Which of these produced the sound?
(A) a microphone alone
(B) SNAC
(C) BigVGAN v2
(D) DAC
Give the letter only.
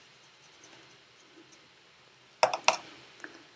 A